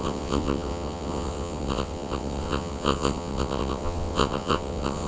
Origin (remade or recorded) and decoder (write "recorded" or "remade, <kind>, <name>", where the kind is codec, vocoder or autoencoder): remade, vocoder, WaveNeXt